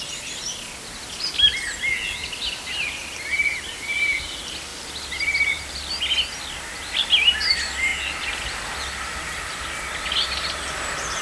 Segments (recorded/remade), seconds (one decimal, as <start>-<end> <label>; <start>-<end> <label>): 0.0-4.7 recorded; 4.7-6.0 remade; 6.0-11.2 recorded